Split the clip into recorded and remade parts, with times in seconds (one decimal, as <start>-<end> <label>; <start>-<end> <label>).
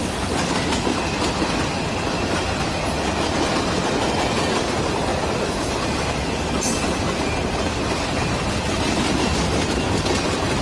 0.0-10.6 recorded